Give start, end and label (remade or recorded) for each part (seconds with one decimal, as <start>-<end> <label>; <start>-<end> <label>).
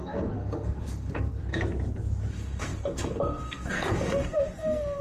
0.0-1.4 remade; 1.4-2.3 recorded; 2.3-5.0 remade